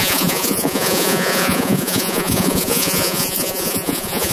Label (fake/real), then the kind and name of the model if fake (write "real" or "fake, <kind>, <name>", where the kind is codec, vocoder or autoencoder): fake, vocoder, Vocos